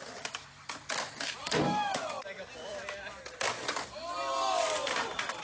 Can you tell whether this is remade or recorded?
recorded